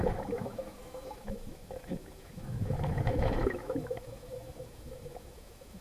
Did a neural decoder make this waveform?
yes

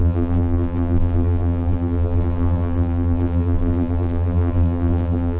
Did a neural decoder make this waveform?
yes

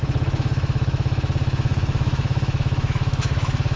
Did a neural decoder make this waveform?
yes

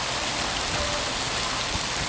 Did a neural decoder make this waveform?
no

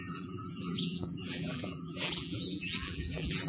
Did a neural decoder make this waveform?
yes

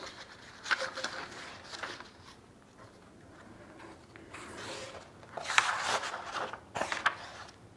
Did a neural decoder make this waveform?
no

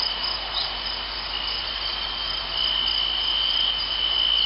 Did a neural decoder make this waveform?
no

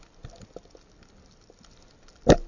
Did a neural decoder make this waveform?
no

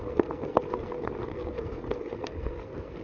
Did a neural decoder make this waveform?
yes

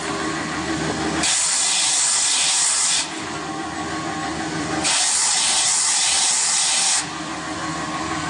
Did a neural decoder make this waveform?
no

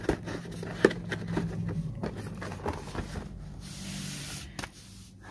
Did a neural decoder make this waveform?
no